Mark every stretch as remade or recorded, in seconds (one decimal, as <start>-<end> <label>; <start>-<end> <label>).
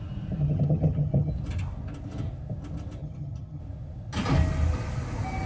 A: 0.0-0.4 recorded; 0.4-1.3 remade; 1.3-3.0 recorded; 3.0-3.6 remade; 3.6-5.5 recorded